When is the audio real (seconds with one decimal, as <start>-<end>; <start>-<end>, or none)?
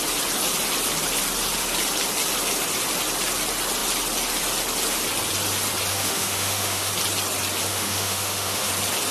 0.0-5.9; 6.9-7.7; 8.7-9.1